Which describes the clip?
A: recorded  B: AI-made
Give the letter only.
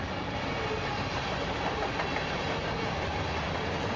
A